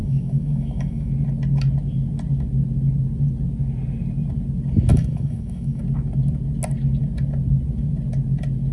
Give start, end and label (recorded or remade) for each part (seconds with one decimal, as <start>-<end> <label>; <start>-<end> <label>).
0.0-1.1 remade; 1.1-4.9 recorded; 4.9-5.8 remade; 5.8-8.7 recorded